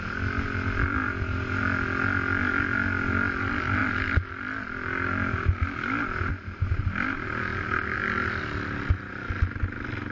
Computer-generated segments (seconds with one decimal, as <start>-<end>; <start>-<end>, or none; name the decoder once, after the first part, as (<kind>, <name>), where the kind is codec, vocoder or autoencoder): none